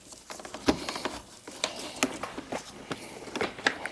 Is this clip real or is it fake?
real